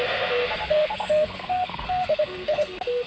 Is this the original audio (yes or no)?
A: no